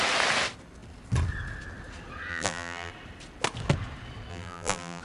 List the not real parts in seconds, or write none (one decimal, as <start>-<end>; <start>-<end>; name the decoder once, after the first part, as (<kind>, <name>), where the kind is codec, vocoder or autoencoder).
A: 2.3-2.9 (vocoder, BigVGAN v2); 4.3-5.0